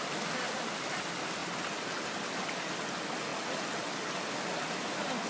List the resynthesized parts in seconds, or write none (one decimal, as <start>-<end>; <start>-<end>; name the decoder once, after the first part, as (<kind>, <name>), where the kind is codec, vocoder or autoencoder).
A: none